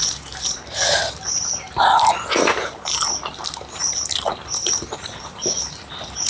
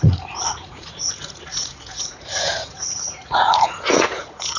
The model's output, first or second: second